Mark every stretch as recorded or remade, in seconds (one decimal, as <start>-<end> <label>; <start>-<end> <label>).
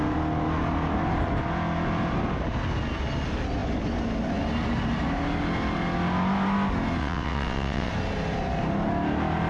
0.0-7.0 recorded; 7.0-7.9 remade; 7.9-9.5 recorded